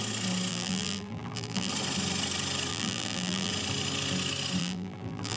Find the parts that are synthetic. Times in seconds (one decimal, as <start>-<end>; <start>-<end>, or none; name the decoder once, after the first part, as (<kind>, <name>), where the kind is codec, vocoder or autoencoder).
0.5-1.7 (vocoder, BigVGAN v2); 2.7-3.5; 4.6-5.4